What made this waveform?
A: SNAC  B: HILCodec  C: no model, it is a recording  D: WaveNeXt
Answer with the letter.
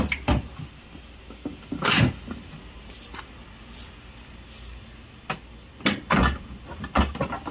C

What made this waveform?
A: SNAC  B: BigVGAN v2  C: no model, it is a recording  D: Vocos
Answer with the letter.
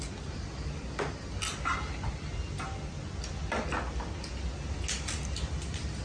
C